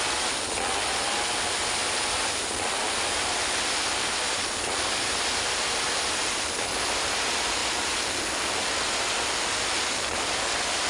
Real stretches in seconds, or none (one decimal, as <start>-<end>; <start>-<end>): 0.0-1.8; 6.7-10.9